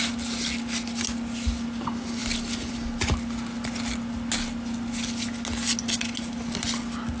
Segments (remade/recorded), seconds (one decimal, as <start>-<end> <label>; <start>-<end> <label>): 0.0-7.2 recorded